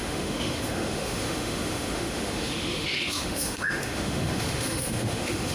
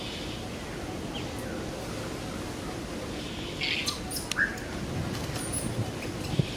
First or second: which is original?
second